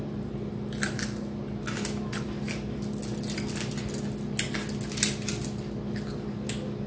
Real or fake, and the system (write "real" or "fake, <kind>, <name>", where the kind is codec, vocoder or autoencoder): real